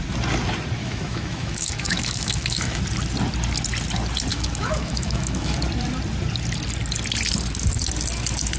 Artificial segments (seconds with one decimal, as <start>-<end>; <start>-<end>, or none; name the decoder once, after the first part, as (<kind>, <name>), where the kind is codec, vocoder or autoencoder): 0.8-2.8 (autoencoder, DAC-VAE); 4.3-5.6